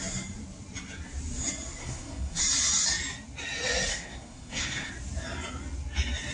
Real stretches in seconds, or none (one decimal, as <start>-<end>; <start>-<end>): 0.0-1.8; 2.4-3.9; 4.9-6.3